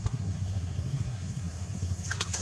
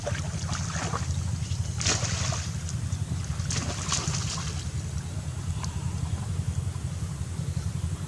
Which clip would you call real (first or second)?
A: second